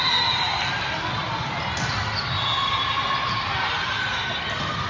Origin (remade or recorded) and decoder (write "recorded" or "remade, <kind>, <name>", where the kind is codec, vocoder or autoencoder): recorded